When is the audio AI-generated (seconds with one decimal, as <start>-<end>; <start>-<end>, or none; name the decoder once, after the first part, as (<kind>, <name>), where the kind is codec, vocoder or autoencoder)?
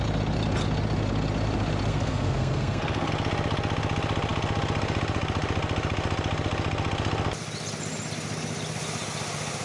1.9-3.1 (codec, SNAC)